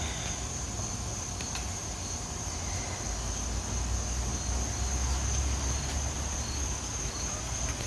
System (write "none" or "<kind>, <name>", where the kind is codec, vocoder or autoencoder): none